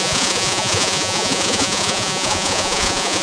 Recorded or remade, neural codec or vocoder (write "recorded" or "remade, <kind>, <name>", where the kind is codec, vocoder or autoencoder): remade, vocoder, Vocos